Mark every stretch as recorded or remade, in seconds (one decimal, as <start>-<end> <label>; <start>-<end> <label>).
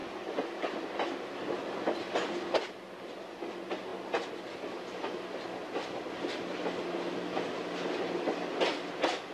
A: 0.0-9.3 recorded